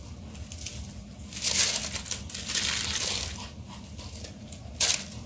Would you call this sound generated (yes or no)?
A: no